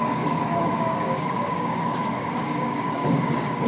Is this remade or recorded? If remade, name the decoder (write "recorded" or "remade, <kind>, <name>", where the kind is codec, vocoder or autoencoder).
remade, codec, DAC